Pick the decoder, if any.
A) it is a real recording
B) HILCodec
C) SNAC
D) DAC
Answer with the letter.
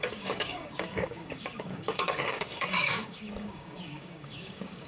D